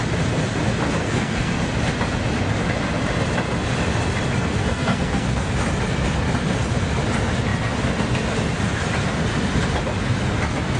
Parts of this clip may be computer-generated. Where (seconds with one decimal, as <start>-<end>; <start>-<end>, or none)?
1.0-1.6; 4.6-5.5